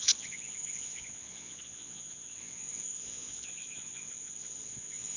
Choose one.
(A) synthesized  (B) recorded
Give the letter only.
A